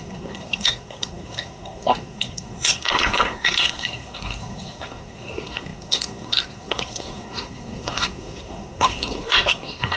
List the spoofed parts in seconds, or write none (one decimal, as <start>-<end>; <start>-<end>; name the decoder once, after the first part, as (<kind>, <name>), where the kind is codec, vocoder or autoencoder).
0.0-10.0 (codec, SNAC)